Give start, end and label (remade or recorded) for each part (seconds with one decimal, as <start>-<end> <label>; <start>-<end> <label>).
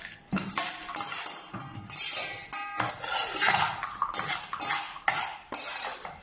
0.0-2.4 remade; 2.4-4.6 recorded; 4.6-6.2 remade